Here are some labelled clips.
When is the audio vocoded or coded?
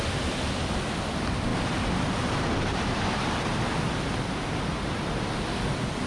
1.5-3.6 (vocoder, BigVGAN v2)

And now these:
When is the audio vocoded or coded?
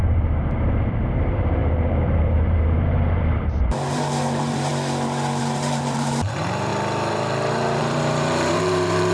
0.0-4.7 (vocoder, BigVGAN v2); 5.4-6.7; 7.8-9.1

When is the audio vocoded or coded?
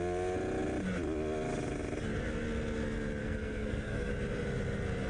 3.2-4.1 (codec, SNAC)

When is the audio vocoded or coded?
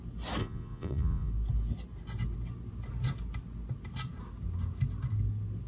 0.4-1.3 (vocoder, Vocos)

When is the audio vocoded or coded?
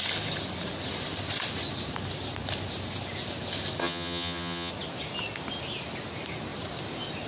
3.8-4.7 (vocoder, HiFi-GAN)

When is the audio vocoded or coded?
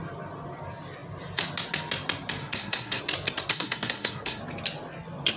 2.4-3.0 (codec, SNAC); 3.5-4.4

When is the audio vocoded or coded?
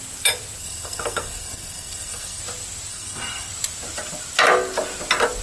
0.6-2.4 (codec, SNAC); 2.9-3.5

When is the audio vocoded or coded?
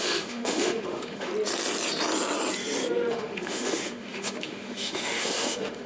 0.0-1.3 (autoencoder, DAC-VAE); 3.1-5.9